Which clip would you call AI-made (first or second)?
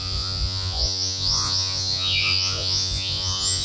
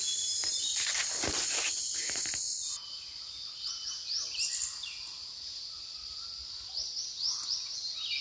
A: first